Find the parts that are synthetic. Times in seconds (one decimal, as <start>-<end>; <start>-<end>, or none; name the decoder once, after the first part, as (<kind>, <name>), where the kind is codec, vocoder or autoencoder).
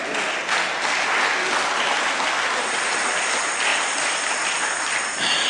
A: 2.6-3.1 (vocoder, BigVGAN v2); 3.7-4.3